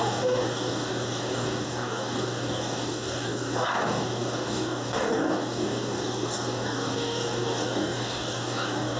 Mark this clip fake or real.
fake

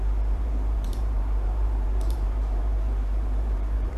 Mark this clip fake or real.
fake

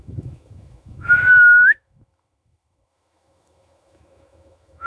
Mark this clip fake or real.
fake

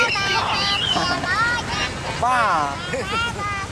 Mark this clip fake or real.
real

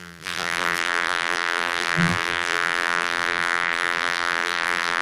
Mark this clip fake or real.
fake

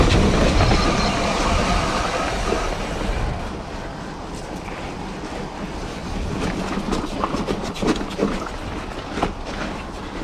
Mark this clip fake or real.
real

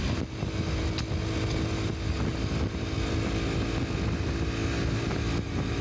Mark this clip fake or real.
real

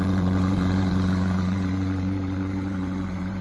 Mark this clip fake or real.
fake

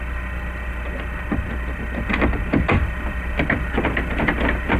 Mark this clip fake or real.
fake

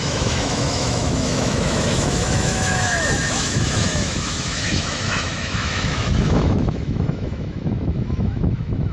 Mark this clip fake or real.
fake